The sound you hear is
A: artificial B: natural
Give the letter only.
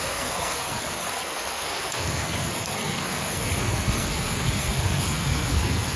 A